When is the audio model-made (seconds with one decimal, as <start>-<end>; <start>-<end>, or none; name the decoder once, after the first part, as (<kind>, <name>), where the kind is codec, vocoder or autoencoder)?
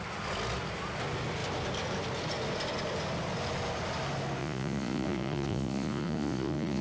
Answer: 4.4-6.8 (vocoder, Vocos)